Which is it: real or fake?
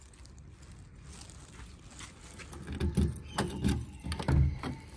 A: real